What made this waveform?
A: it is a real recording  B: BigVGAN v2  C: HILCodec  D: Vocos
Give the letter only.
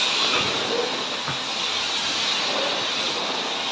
A